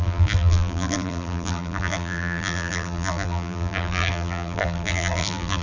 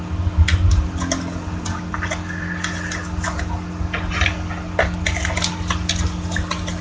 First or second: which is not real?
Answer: first